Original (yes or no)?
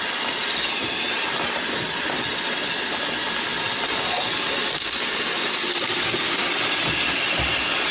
no